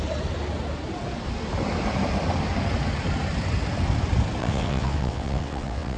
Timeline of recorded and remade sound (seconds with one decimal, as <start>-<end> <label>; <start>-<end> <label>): 0.0-4.4 recorded; 4.4-6.0 remade